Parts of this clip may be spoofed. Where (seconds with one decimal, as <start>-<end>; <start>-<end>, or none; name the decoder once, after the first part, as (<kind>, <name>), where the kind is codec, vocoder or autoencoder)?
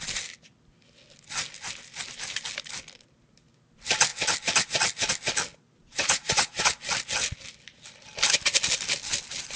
5.8-6.7 (vocoder, Vocos)